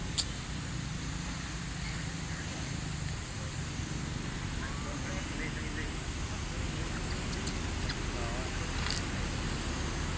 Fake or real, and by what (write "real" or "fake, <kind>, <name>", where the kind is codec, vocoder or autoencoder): real